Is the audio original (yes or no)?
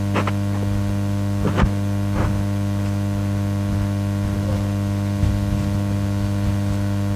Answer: yes